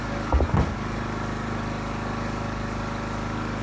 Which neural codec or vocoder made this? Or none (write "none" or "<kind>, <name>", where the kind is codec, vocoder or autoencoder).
codec, DAC